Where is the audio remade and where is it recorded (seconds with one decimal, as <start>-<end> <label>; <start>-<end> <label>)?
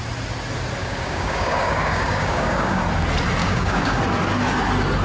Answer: 0.0-0.8 recorded; 0.8-2.8 remade; 2.8-3.4 recorded; 3.4-4.0 remade; 4.0-5.0 recorded